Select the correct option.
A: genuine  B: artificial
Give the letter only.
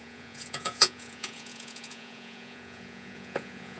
B